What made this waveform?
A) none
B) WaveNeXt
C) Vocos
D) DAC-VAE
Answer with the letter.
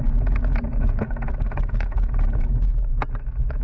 C